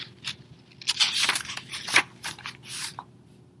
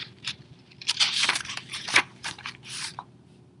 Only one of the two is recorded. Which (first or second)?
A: first